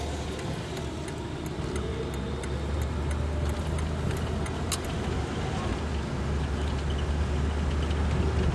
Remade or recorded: recorded